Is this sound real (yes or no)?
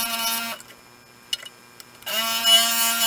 yes